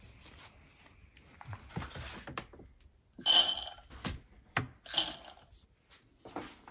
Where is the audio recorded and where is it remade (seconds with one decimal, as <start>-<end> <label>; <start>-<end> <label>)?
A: 0.0-6.7 recorded